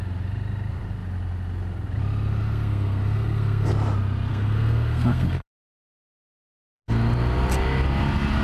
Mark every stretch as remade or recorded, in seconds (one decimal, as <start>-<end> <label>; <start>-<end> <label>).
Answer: 0.0-2.4 recorded; 2.4-3.7 remade; 3.7-4.3 recorded; 4.3-6.8 remade; 6.8-8.4 recorded